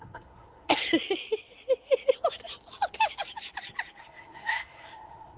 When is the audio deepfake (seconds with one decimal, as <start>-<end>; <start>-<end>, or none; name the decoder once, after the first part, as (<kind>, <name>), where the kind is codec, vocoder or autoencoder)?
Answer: 0.0-0.8 (codec, SNAC); 4.0-5.4